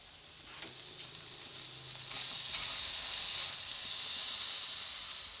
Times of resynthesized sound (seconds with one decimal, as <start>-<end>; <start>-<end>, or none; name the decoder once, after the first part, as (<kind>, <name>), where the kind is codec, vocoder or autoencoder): none